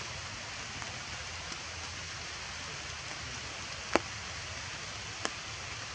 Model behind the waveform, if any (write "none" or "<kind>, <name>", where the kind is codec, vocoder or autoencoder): none